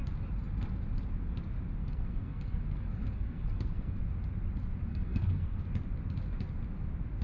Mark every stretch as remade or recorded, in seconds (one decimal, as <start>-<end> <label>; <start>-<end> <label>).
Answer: 0.0-1.8 recorded; 1.8-4.0 remade; 4.0-4.9 recorded; 4.9-5.6 remade; 5.6-7.2 recorded